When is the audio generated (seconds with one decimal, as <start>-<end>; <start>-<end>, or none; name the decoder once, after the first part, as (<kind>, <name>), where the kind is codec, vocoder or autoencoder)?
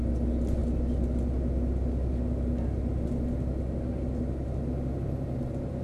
none